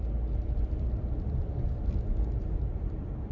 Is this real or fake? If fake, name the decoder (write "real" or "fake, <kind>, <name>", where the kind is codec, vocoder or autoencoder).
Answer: fake, vocoder, BigVGAN v2